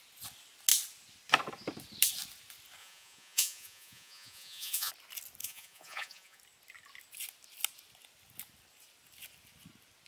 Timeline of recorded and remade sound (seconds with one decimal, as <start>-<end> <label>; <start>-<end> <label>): 0.0-2.8 recorded; 2.8-4.9 remade; 4.9-5.4 recorded; 5.4-6.4 remade; 6.4-10.1 recorded